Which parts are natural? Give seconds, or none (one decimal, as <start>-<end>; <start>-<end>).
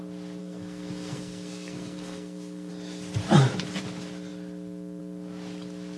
0.0-0.4; 2.7-6.0